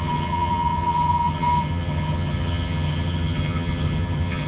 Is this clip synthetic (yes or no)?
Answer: yes